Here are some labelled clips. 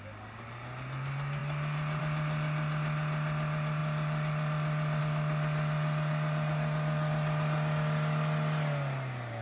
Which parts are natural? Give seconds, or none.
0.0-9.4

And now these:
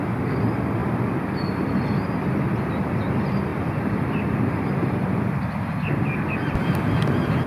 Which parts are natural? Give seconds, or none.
0.0-0.8; 2.8-3.5; 4.7-7.5